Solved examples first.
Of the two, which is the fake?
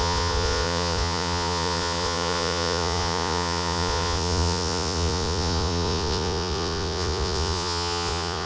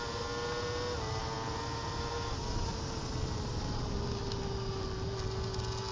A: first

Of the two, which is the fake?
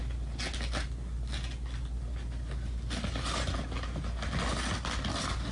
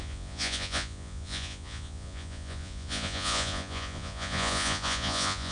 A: second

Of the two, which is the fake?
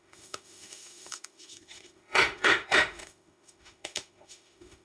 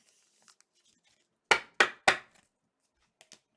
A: first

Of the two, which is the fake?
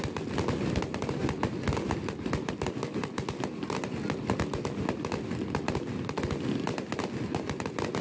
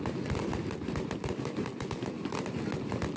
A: second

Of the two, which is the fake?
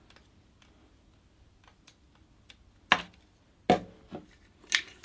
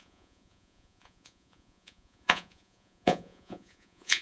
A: second